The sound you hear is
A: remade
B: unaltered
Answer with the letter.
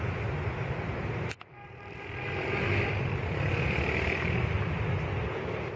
B